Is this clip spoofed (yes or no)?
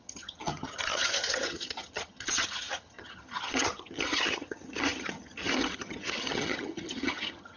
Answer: yes